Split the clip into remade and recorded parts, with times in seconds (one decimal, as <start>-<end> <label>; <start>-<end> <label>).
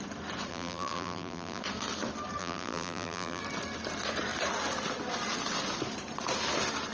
0.0-0.5 recorded; 0.5-1.6 remade; 1.6-2.4 recorded; 2.4-3.4 remade; 3.4-6.9 recorded